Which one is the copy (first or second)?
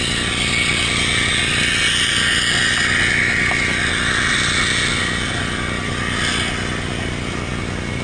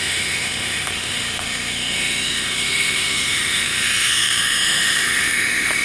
second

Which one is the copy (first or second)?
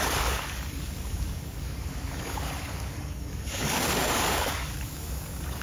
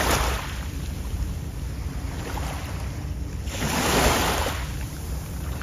first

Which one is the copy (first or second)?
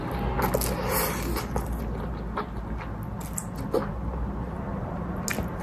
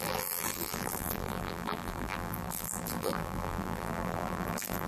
second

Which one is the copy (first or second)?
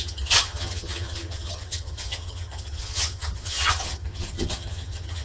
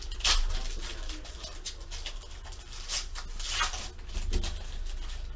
first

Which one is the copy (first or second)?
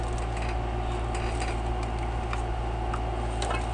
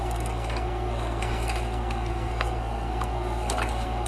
second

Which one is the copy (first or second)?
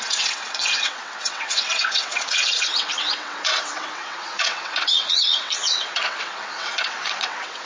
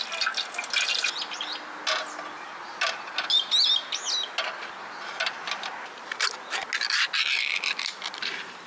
first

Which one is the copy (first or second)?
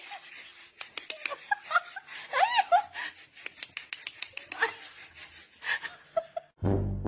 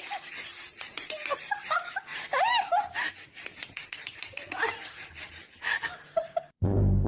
second